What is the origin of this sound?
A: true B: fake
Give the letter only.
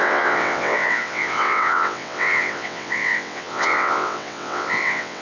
B